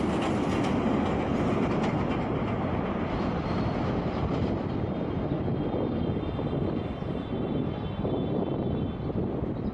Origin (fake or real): real